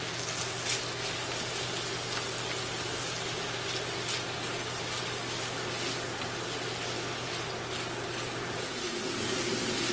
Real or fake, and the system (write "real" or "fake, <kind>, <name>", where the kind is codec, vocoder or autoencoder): real